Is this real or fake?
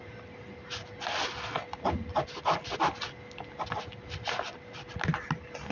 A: real